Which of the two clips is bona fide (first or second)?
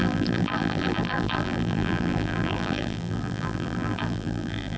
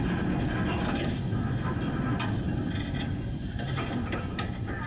second